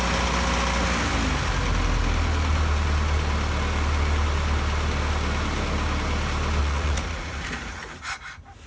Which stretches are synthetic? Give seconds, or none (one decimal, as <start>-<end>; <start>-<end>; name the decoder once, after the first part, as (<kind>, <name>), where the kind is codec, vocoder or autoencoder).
6.6-7.8 (vocoder, Vocos)